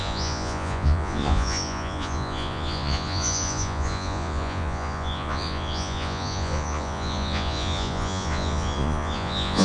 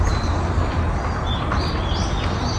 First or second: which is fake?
first